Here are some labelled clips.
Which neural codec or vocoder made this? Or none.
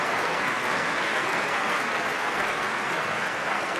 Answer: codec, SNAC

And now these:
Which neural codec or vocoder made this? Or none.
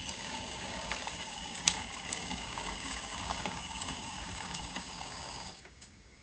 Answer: codec, DAC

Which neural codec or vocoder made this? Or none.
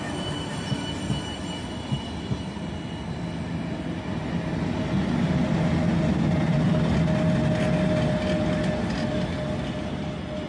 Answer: none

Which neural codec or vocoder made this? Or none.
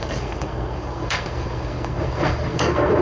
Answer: codec, SNAC